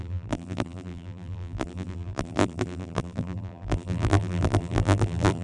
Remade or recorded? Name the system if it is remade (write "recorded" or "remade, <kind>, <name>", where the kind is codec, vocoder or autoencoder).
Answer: remade, vocoder, BigVGAN v2